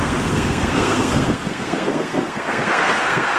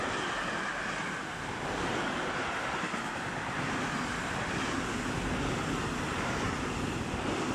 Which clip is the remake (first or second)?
first